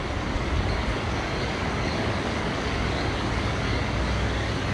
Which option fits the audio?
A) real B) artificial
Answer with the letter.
B